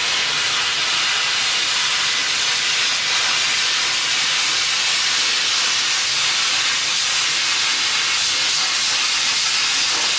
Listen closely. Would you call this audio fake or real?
real